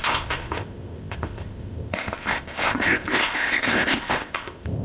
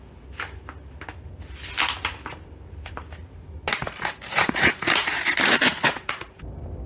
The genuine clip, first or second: second